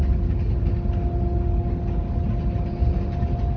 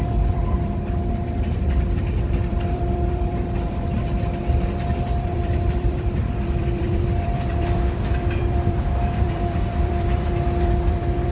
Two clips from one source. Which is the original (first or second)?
first